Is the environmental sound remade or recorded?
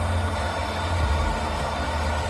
recorded